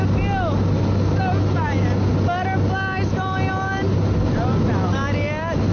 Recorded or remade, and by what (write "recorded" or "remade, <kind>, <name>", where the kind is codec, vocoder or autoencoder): recorded